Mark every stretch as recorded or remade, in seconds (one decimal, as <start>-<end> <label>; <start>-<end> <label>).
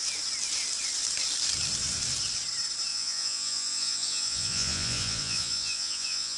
0.0-2.9 recorded; 2.9-6.4 remade